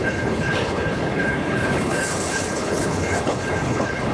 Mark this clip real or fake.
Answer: fake